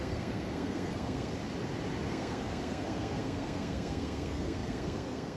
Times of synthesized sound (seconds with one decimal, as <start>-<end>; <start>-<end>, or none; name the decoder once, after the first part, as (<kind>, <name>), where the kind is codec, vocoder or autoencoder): 0.0-1.3 (codec, SNAC); 2.1-5.4